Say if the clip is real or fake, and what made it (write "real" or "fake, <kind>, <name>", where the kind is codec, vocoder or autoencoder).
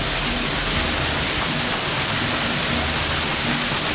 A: real